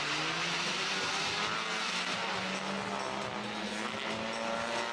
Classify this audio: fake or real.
real